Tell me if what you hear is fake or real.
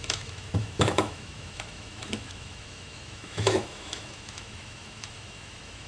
fake